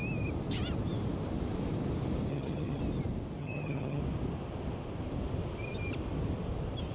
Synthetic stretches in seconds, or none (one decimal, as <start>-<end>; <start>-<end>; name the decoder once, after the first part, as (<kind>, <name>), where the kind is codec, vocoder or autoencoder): 2.3-2.8 (vocoder, HiFi-GAN); 3.4-4.0